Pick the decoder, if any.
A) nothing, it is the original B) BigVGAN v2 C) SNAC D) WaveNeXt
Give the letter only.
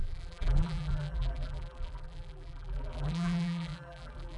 B